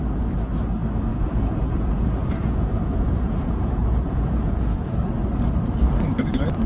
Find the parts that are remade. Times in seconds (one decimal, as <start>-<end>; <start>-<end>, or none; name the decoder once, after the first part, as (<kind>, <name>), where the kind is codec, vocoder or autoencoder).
1.1-5.1 (vocoder, Vocos)